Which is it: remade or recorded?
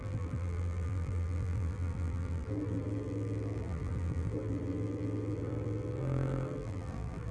remade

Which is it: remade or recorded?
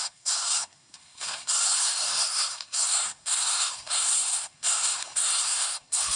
remade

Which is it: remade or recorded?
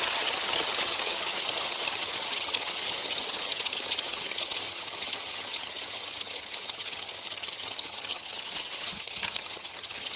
remade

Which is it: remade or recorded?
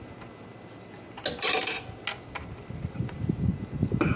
recorded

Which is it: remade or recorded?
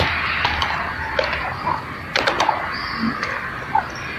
recorded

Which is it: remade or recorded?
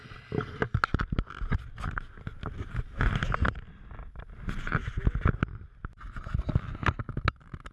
recorded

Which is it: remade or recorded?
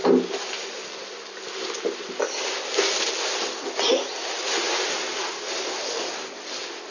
recorded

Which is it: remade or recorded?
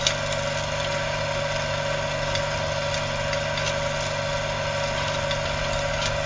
recorded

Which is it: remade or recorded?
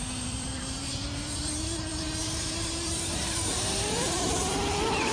remade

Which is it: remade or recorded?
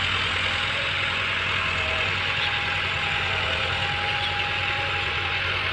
remade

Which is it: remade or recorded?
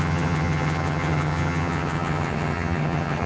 remade